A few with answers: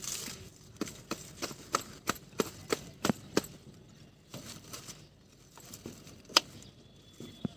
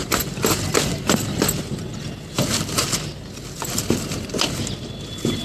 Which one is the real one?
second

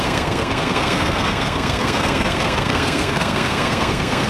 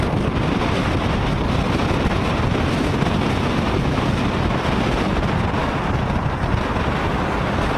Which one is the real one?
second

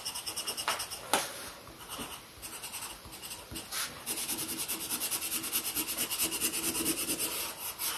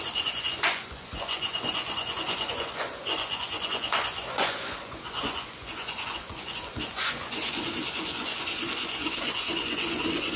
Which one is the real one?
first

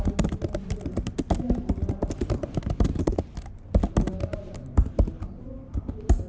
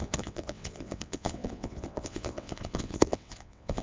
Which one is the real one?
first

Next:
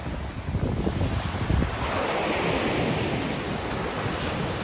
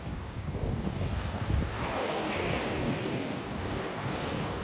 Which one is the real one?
first